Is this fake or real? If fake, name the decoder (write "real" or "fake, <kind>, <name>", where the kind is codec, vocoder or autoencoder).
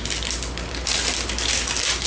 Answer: real